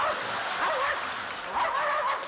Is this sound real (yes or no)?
yes